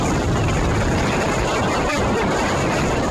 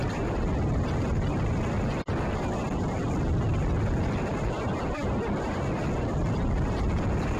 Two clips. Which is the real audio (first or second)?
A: second